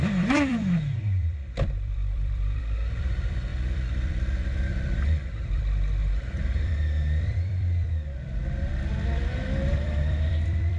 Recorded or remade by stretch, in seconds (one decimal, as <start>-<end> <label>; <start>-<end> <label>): 0.0-8.7 remade; 8.7-9.7 recorded; 9.7-10.8 remade